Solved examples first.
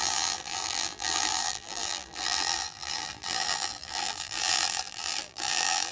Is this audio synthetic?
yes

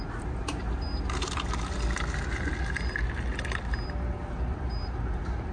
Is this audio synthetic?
no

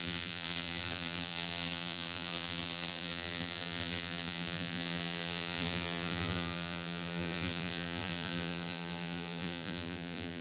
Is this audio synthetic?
yes